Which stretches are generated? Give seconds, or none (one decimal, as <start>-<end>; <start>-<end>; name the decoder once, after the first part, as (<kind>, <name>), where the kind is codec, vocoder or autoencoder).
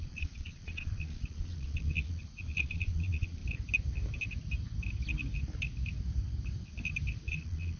0.0-3.4 (vocoder, Vocos); 7.3-7.8